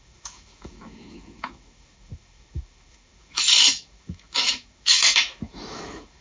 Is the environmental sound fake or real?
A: fake